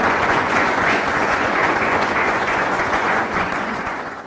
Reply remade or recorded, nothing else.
remade